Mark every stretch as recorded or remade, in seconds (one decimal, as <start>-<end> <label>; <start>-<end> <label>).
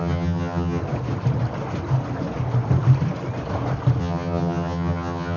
0.0-0.8 remade; 0.8-4.0 recorded; 4.0-5.4 remade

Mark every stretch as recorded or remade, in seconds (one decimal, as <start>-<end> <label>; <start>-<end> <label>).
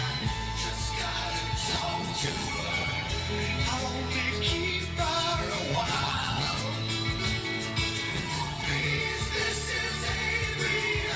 0.0-1.6 recorded; 1.6-3.1 remade; 3.1-5.7 recorded; 5.7-6.6 remade; 6.6-8.1 recorded; 8.1-9.0 remade; 9.0-11.2 recorded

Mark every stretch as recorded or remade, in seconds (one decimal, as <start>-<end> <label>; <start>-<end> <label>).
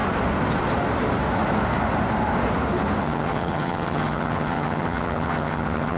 0.0-3.0 recorded; 3.0-6.0 remade